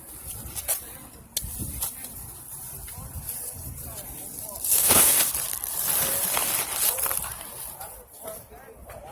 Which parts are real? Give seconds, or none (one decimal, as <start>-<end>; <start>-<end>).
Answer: 0.0-4.7; 5.3-9.1

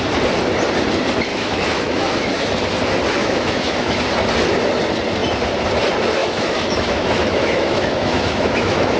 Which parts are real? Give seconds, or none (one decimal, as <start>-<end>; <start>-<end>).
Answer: 0.0-1.3; 2.5-3.2; 4.0-6.2

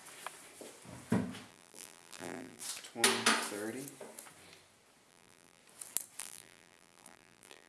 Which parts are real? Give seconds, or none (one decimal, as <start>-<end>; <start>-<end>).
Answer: 0.0-1.5; 2.6-5.1; 5.6-6.2

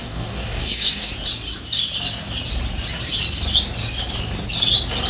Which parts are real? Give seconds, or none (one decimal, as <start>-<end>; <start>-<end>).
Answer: 1.1-5.1

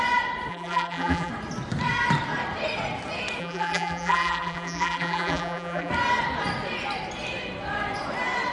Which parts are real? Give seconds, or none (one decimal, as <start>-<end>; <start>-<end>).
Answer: 0.0-0.5; 1.3-3.4; 5.9-8.5

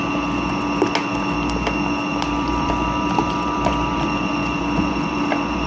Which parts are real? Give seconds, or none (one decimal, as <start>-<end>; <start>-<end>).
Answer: 0.0-2.1

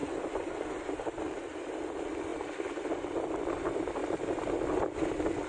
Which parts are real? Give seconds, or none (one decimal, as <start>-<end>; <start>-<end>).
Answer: 1.9-5.5

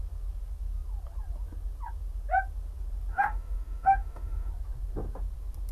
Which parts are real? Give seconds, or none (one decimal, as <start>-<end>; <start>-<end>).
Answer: 0.0-3.1; 4.5-5.7